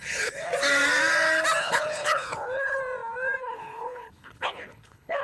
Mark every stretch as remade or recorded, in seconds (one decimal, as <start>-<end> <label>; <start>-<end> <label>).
0.0-0.5 remade; 0.5-1.6 recorded; 1.6-2.8 remade; 2.8-3.4 recorded; 3.4-5.2 remade